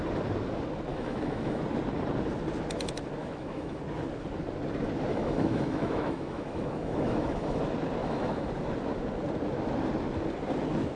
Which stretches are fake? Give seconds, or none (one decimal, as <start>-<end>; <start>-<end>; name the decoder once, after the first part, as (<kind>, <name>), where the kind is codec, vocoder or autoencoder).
0.9-1.6 (autoencoder, DAC-VAE); 3.2-3.8; 5.1-7.6; 8.0-8.5